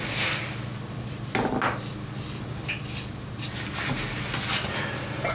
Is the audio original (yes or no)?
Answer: yes